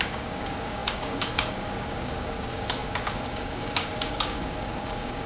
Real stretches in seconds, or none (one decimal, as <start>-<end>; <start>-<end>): none